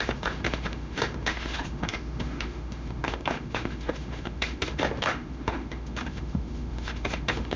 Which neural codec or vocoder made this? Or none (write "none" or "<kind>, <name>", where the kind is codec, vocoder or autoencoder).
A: autoencoder, DAC-VAE